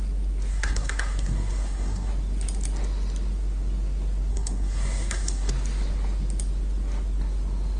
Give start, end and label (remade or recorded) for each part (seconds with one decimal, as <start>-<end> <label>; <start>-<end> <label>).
0.0-0.5 recorded; 0.5-2.1 remade; 2.1-4.3 recorded; 4.3-5.5 remade; 5.5-7.8 recorded